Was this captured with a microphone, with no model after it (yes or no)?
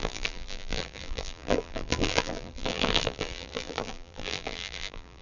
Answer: no